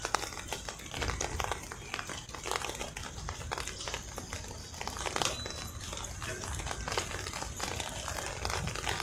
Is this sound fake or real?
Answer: real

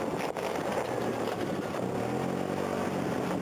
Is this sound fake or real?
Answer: real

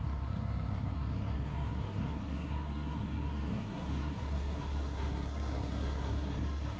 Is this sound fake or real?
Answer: fake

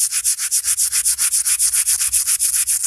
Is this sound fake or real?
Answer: real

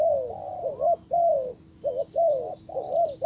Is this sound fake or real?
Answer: real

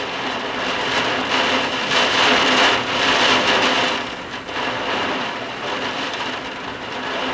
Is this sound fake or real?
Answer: real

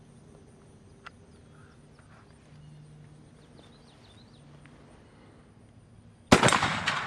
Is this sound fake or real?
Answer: real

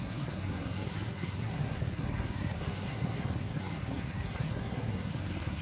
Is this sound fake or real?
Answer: fake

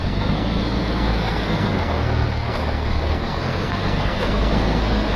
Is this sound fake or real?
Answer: fake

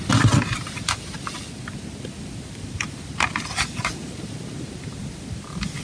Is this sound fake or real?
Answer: real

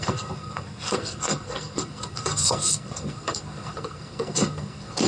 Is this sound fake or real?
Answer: fake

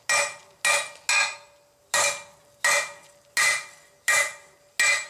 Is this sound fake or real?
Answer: real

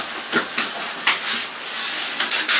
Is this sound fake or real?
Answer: real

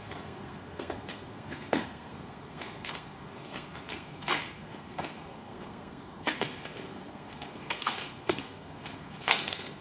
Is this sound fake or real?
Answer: fake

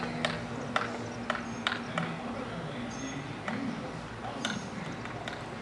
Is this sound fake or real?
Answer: real